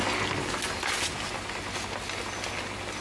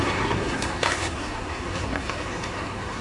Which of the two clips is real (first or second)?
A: first